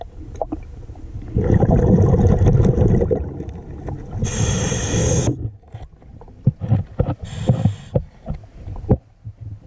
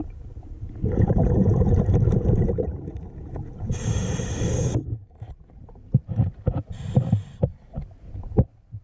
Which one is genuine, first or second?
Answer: first